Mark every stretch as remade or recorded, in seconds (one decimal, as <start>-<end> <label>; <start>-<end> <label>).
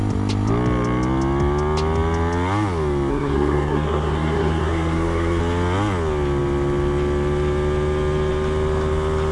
0.0-3.1 recorded; 3.1-5.4 remade; 5.4-9.3 recorded